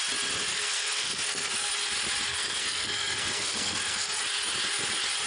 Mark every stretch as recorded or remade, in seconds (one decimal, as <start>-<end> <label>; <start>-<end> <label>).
0.0-0.5 recorded; 0.5-1.7 remade; 1.7-2.3 recorded; 2.3-4.2 remade; 4.2-5.3 recorded